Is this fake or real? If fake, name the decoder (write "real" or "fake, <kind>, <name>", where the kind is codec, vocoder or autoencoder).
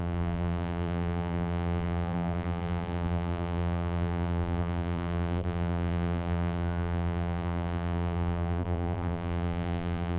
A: fake, vocoder, BigVGAN v2